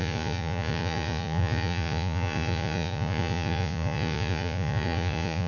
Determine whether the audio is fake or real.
fake